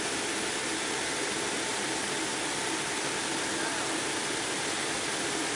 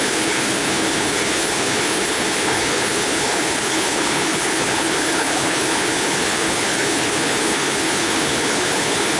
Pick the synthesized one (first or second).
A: second